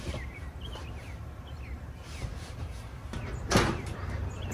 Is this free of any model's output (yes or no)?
no